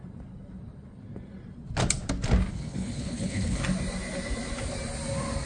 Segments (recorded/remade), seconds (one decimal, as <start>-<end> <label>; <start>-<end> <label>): 0.0-2.5 recorded; 2.5-3.6 remade; 3.6-5.5 recorded